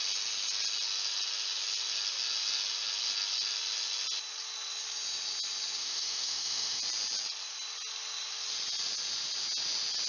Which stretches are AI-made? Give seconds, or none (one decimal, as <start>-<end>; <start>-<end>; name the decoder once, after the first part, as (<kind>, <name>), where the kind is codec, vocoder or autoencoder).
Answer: 5.8-6.8 (autoencoder, DAC-VAE)

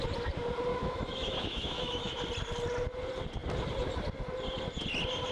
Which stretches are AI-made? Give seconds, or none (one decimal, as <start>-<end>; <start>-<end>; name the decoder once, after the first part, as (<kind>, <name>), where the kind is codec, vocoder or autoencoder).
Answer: 0.7-2.2 (autoencoder, DAC-VAE)

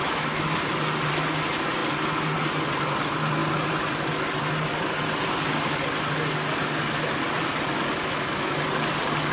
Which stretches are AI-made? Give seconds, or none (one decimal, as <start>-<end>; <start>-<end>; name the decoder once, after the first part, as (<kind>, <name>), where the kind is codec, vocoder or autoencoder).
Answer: 0.0-0.6 (autoencoder, DAC-VAE); 7.9-8.5